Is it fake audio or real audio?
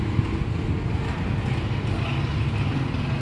real